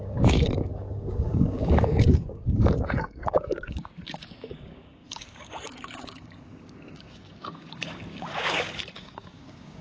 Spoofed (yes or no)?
yes